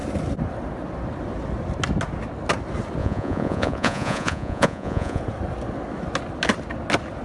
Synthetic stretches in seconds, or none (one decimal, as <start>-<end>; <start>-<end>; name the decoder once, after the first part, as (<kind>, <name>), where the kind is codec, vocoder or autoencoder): 3.0-5.2 (vocoder, Vocos)